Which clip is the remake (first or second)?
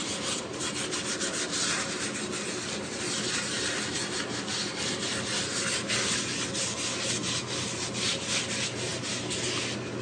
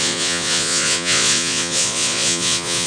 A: second